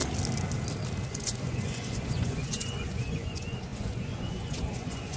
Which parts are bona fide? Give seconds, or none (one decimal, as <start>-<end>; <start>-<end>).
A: 0.0-1.1